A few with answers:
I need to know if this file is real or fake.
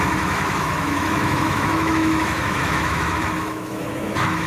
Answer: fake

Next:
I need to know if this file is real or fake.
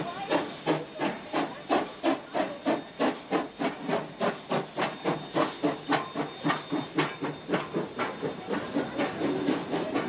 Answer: real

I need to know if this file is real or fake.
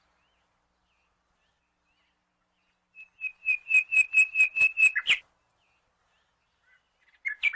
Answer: real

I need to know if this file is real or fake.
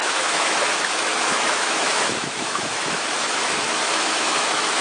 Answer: fake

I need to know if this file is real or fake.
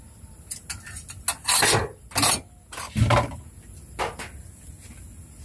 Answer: real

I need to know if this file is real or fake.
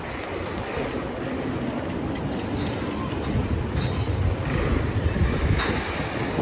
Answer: real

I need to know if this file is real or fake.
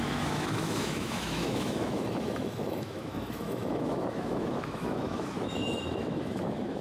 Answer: fake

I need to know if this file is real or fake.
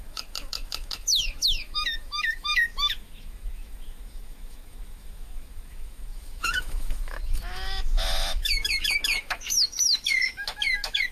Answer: fake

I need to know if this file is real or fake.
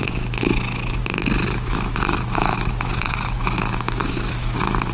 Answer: fake